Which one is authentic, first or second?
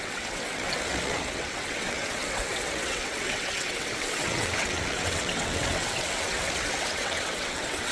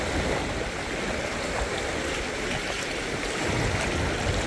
second